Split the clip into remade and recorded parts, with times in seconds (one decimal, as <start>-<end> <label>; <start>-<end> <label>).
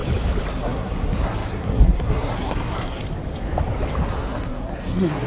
0.0-0.5 recorded; 0.5-3.0 remade; 3.0-4.1 recorded; 4.1-5.3 remade